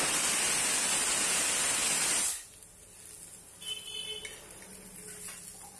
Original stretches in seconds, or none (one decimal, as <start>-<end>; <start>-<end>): 0.0-5.8